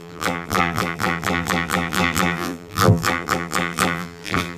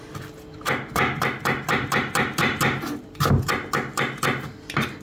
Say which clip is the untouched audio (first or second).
second